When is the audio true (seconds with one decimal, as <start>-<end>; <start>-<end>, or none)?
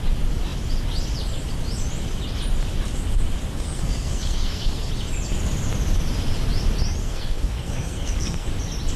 0.0-3.5; 4.9-7.0; 8.5-9.0